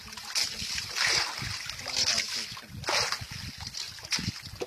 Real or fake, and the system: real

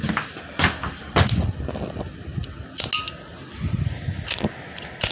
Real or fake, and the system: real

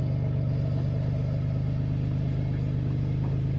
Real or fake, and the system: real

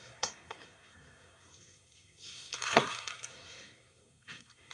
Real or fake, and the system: fake, codec, SNAC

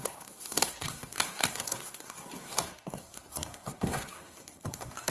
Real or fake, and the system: fake, codec, SNAC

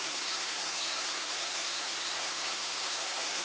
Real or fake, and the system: fake, codec, SNAC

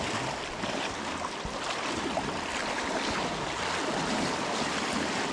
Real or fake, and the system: real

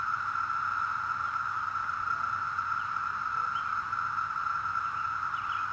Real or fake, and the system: real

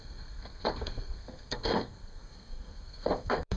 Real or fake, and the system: fake, codec, SNAC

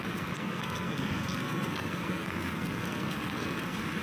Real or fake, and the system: fake, codec, SNAC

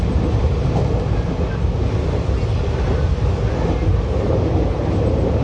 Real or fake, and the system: real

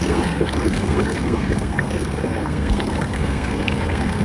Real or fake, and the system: fake, codec, SNAC